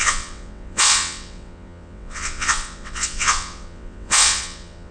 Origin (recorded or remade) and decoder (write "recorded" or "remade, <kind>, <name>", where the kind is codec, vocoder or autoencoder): remade, vocoder, WaveNeXt